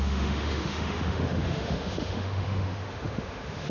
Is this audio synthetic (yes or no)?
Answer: yes